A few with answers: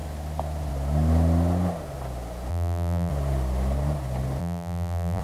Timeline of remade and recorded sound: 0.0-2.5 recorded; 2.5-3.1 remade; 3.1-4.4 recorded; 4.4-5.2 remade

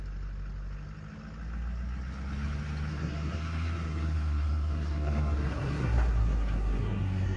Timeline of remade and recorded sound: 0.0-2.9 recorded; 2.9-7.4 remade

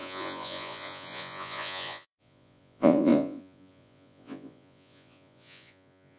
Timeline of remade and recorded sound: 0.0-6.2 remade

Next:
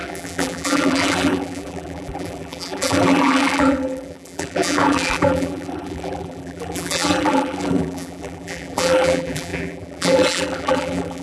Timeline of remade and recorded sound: 0.0-11.2 remade

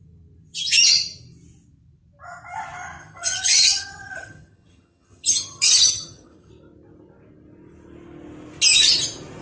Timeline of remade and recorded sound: 0.0-3.0 recorded; 3.0-6.5 remade; 6.5-9.4 recorded

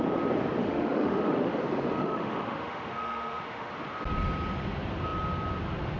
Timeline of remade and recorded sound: 0.0-0.6 recorded; 0.6-1.6 remade; 1.6-2.0 recorded; 2.0-3.7 remade; 3.7-6.0 recorded

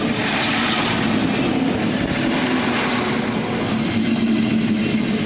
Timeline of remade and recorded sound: 0.0-5.3 recorded